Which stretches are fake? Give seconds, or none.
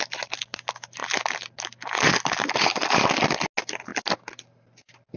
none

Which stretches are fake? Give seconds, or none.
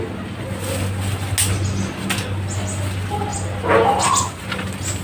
none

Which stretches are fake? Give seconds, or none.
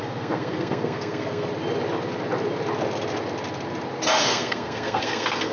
0.0-1.5 (codec, SNAC); 4.2-5.5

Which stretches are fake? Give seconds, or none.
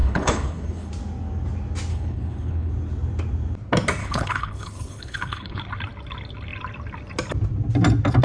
0.0-0.9 (codec, HILCodec); 1.9-2.7; 4.0-5.6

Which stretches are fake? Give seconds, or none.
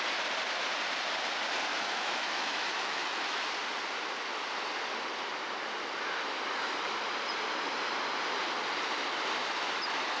1.7-3.4 (autoencoder, DAC-VAE)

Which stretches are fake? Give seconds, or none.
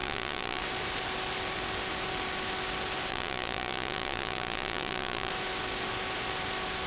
0.0-0.6 (vocoder, Vocos); 3.1-5.3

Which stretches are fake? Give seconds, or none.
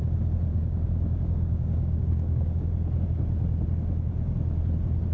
0.5-2.7 (codec, DAC)